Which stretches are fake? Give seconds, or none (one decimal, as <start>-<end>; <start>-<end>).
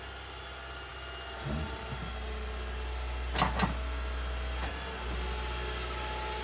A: none